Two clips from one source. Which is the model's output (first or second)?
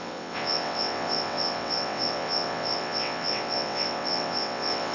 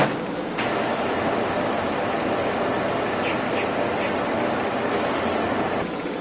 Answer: first